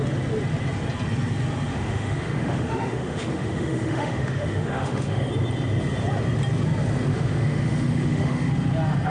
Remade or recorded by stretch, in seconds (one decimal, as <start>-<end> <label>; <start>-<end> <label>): 0.0-1.7 recorded; 1.7-5.3 remade; 5.3-7.1 recorded; 7.1-8.5 remade; 8.5-9.1 recorded